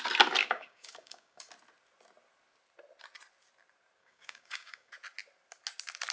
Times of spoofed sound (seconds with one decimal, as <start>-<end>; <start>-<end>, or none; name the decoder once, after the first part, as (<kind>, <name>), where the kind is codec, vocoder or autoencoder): 0.4-1.4 (codec, DAC); 4.0-4.9